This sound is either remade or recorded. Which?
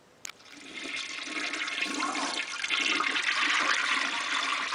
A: recorded